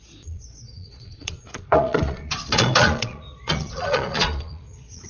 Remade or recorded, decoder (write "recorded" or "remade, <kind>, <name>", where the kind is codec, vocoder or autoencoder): remade, vocoder, Vocos